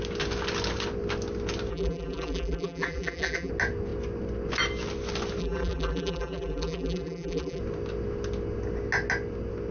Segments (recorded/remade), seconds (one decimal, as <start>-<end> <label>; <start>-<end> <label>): 0.0-1.7 recorded; 1.7-3.5 remade; 3.5-5.4 recorded; 5.4-7.6 remade; 7.6-9.7 recorded